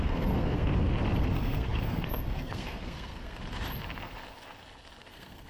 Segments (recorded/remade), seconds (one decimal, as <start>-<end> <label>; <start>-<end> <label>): 0.0-0.7 remade; 0.7-1.2 recorded; 1.2-3.4 remade; 3.4-5.0 recorded; 5.0-5.5 remade